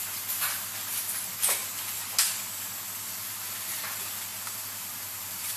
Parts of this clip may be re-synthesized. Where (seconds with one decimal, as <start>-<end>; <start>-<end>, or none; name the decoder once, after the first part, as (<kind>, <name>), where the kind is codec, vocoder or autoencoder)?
4.3-5.6 (vocoder, BigVGAN v2)